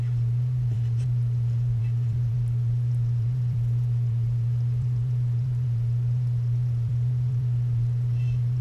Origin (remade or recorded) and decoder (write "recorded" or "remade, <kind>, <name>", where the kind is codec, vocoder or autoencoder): remade, vocoder, BigVGAN v2